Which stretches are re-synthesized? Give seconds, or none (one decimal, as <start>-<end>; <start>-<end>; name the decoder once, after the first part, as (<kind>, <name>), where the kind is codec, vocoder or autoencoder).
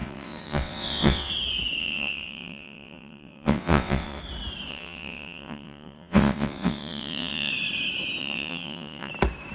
0.0-1.3 (vocoder, WaveNeXt); 1.8-4.2; 4.7-7.5; 8.2-9.1